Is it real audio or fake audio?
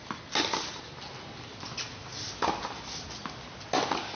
real